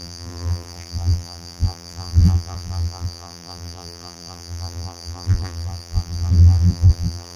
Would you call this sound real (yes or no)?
no